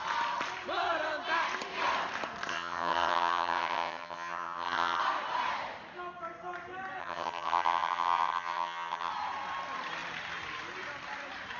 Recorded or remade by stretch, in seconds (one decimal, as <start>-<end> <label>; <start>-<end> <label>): 0.0-2.5 recorded; 2.5-5.0 remade; 5.0-7.0 recorded; 7.0-9.1 remade; 9.1-11.6 recorded